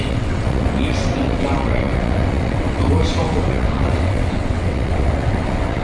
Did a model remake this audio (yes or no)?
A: yes